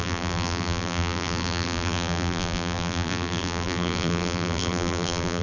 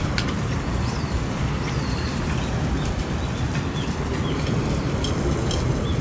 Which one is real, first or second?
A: second